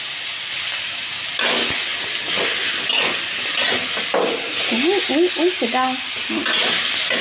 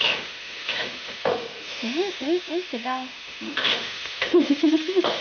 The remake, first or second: second